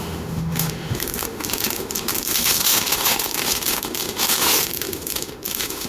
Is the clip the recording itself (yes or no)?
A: no